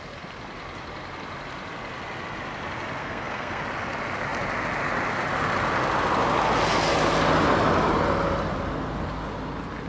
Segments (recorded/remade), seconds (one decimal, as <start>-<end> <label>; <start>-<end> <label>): 0.0-3.0 recorded; 3.0-3.6 remade; 3.6-9.9 recorded